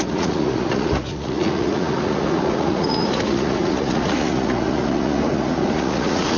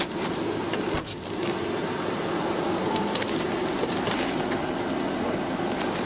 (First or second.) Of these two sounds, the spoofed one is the first